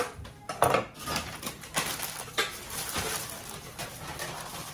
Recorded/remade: recorded